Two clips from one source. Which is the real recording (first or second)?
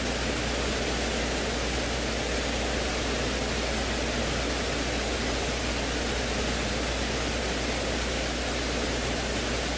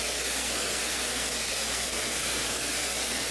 first